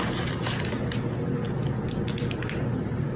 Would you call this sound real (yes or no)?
yes